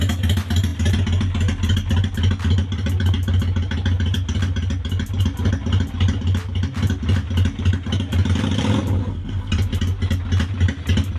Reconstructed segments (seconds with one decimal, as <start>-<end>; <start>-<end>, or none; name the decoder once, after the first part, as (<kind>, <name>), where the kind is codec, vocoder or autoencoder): 9.0-9.5 (codec, SNAC)